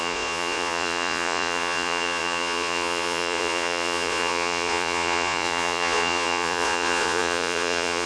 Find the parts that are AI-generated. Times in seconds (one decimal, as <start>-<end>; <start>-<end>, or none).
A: 0.0-8.1